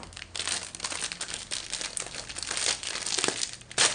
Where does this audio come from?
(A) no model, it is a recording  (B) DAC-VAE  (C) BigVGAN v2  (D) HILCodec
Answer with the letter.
A